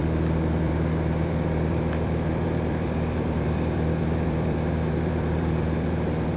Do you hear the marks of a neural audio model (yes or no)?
yes